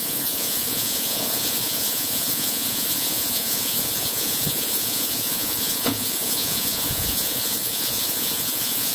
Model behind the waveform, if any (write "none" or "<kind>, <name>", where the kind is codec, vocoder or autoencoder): vocoder, Vocos